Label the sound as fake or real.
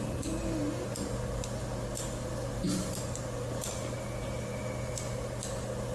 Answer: real